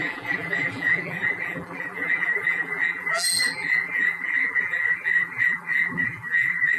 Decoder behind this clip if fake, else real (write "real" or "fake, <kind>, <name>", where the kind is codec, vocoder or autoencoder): fake, vocoder, BigVGAN v2